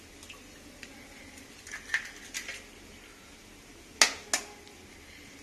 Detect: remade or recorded recorded